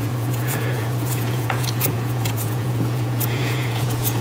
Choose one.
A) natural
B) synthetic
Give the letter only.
B